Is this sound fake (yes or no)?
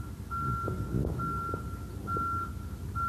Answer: no